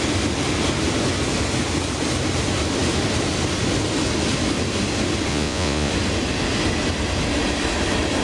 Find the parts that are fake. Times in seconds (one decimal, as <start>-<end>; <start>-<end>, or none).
5.3-5.9